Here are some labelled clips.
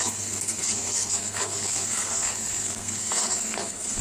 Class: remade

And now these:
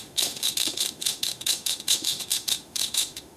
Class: remade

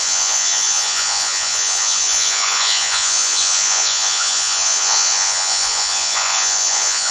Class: remade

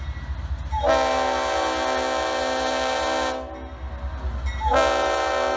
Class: recorded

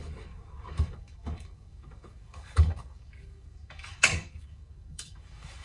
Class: remade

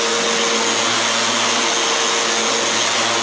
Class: recorded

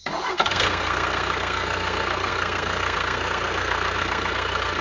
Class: remade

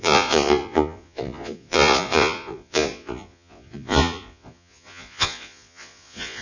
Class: remade